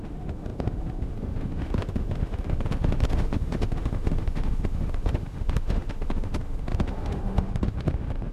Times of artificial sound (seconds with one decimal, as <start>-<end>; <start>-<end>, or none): 0.0-8.3